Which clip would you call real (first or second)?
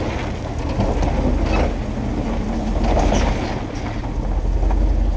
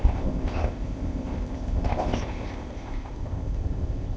first